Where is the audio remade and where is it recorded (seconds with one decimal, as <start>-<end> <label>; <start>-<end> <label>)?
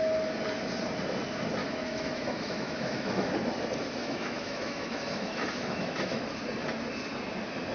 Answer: 0.0-1.6 recorded; 1.6-3.3 remade; 3.3-4.0 recorded; 4.0-6.2 remade; 6.2-7.7 recorded